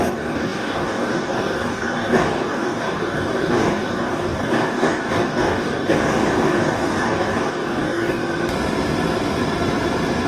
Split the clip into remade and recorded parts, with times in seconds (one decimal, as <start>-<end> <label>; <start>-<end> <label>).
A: 0.0-8.2 remade; 8.2-10.3 recorded